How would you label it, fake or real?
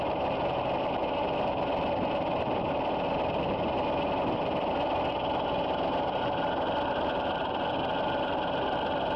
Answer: real